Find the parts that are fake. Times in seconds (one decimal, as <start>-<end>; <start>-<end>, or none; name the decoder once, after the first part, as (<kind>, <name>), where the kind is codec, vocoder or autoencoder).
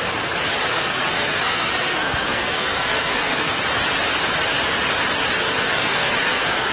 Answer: 0.7-3.6 (codec, SNAC); 5.5-6.7